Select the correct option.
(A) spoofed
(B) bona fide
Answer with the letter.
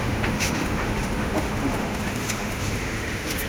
A